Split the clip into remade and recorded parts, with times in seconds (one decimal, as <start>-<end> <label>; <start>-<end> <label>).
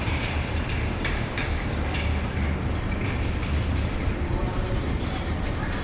0.0-1.4 remade; 1.4-4.1 recorded; 4.1-5.8 remade